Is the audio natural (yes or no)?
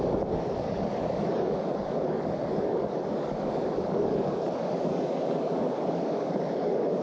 no